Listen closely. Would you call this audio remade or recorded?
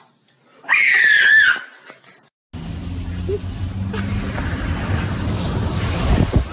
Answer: recorded